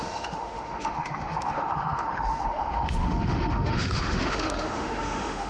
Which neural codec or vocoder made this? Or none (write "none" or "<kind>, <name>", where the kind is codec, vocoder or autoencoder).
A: autoencoder, DAC-VAE